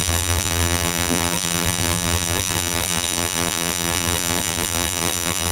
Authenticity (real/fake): fake